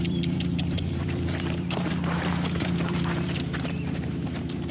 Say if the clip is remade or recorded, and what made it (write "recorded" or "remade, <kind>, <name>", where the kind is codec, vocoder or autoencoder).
remade, vocoder, BigVGAN v2